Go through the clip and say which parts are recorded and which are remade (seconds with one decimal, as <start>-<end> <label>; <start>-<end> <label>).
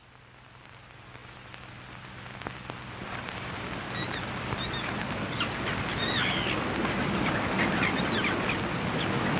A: 0.0-9.4 recorded